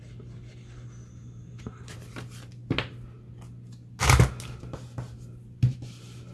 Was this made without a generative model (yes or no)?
yes